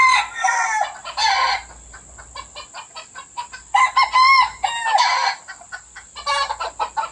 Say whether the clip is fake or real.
real